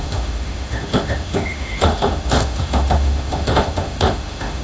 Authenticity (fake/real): fake